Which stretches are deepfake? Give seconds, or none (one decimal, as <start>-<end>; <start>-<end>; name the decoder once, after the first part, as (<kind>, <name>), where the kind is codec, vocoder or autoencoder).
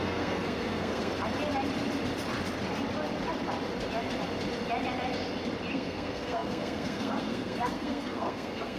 0.0-1.1 (codec, SNAC); 5.7-8.8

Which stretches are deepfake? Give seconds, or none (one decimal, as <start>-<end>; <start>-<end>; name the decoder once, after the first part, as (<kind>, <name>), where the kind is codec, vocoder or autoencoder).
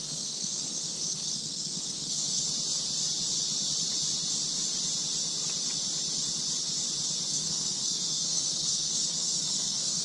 0.0-2.4 (codec, SNAC); 7.3-10.0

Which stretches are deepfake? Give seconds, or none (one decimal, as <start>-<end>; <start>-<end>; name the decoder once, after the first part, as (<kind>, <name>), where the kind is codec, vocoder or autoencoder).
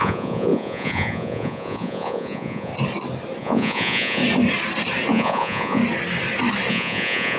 0.0-2.7 (vocoder, Vocos); 3.4-4.2; 5.1-5.8; 6.7-7.4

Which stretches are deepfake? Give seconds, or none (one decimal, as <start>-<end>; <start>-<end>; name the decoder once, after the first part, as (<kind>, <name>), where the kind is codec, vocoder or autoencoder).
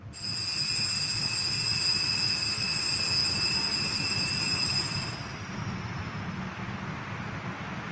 3.2-5.1 (vocoder, BigVGAN v2)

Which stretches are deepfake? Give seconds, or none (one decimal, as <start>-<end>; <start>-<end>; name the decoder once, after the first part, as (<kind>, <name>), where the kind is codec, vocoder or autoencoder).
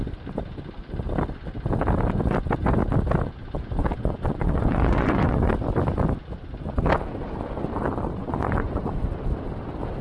3.8-5.5 (vocoder, Vocos); 8.2-8.8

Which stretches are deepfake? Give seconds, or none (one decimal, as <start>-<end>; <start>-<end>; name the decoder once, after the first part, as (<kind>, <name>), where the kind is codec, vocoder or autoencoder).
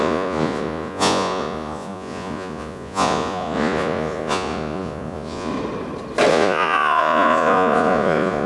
0.0-5.5 (vocoder, Vocos); 6.3-8.5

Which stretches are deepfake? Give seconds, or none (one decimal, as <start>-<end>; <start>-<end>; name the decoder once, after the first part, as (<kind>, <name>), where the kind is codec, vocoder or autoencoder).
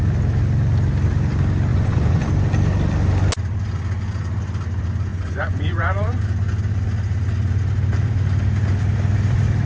1.7-2.3 (vocoder, Vocos); 5.1-6.2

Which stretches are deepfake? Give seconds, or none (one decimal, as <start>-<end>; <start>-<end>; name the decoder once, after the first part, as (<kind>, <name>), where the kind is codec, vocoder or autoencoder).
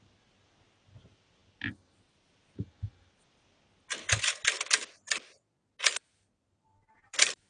0.0-1.4 (vocoder, BigVGAN v2); 5.9-7.5